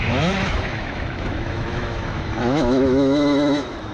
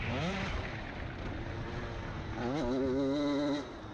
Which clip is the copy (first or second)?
first